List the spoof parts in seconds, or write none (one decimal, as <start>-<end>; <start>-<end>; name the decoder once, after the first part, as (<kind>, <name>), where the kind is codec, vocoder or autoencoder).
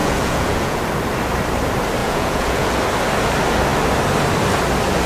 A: 0.0-0.8 (vocoder, Vocos); 2.0-2.7